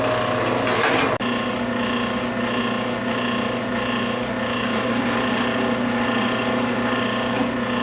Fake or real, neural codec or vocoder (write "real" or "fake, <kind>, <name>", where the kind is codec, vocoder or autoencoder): real